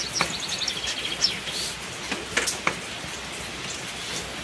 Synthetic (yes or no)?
no